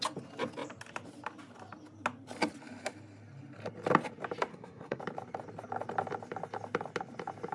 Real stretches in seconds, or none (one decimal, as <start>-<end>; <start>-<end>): 0.0-4.5; 5.0-7.5

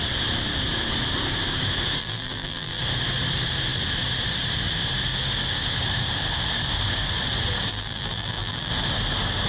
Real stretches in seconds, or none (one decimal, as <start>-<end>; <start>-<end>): 0.0-2.0; 2.8-7.7; 8.7-9.5

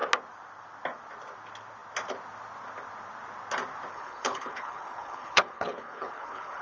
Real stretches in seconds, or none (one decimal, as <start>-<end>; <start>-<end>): 0.0-3.9

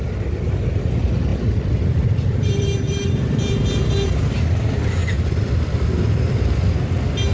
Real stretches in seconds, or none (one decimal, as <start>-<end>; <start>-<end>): 0.0-1.3; 4.2-5.0; 6.6-7.3

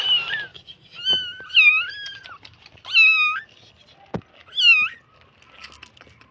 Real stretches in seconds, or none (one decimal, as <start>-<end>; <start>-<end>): 0.0-6.3

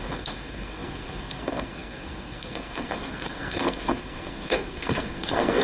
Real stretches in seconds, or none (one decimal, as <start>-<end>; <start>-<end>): none